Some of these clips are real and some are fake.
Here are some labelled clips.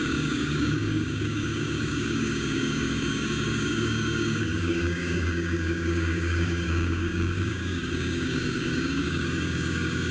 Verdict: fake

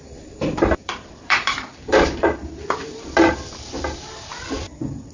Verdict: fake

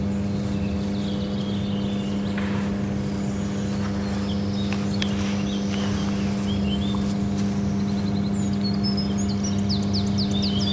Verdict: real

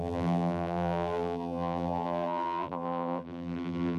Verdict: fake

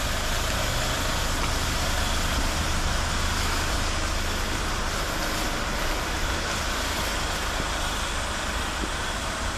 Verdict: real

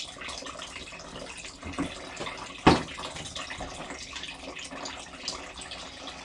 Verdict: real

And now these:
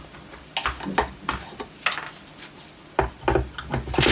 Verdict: real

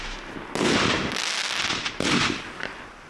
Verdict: real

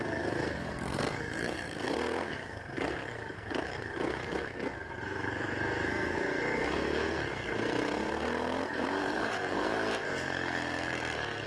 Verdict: fake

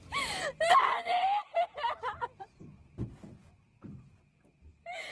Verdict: fake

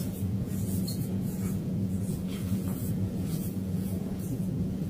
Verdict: fake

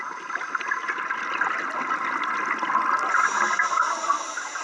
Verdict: real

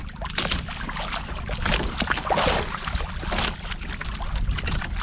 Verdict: real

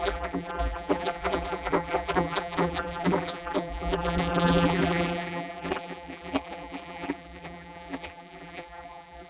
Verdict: fake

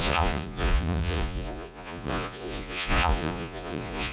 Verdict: fake